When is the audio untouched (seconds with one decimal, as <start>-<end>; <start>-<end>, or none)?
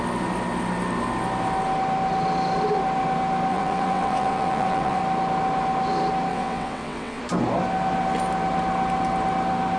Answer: 0.0-3.5; 5.0-6.3; 7.2-9.8